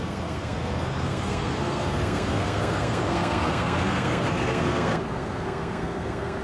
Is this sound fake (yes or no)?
yes